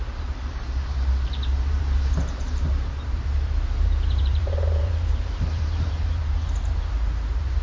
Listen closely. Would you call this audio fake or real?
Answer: fake